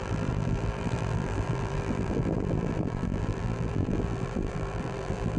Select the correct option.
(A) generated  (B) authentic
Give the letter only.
A